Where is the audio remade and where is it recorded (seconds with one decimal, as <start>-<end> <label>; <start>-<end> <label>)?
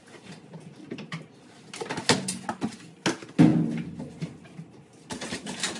0.0-5.8 recorded